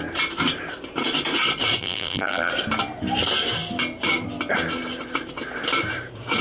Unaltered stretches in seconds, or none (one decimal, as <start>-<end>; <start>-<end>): 0.0-1.8; 2.5-6.4